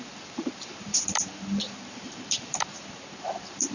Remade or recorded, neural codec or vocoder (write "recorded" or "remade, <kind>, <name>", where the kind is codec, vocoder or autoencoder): remade, vocoder, BigVGAN v2